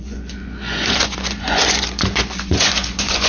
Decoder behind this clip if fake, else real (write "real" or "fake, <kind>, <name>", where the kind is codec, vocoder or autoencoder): fake, vocoder, Vocos